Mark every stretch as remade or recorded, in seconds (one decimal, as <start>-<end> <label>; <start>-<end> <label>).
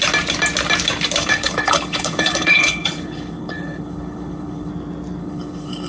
0.0-1.2 recorded; 1.2-4.7 remade; 4.7-5.2 recorded; 5.2-5.9 remade